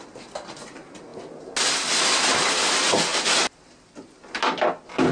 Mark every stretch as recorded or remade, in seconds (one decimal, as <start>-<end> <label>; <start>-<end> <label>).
0.0-5.1 recorded

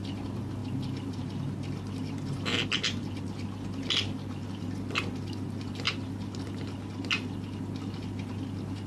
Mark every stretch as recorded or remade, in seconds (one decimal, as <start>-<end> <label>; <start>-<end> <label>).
0.0-8.9 recorded

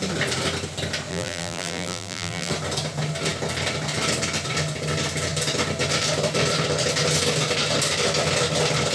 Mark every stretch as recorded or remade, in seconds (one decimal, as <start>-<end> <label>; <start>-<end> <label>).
0.0-1.1 recorded; 1.1-2.5 remade; 2.5-8.9 recorded

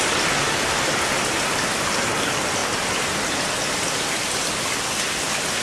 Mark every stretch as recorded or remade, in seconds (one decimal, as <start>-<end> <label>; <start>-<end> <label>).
0.0-2.6 recorded; 2.6-3.2 remade; 3.2-5.6 recorded

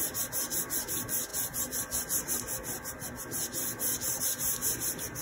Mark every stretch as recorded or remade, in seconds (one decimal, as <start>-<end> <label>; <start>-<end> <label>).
0.0-5.2 recorded